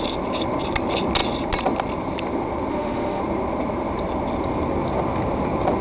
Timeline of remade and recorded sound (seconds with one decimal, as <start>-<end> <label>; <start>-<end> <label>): 0.0-2.7 recorded; 2.7-3.2 remade; 3.2-5.8 recorded